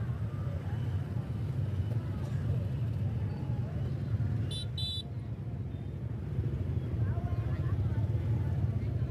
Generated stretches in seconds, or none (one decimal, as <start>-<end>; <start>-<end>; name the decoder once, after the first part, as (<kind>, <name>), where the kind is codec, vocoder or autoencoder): none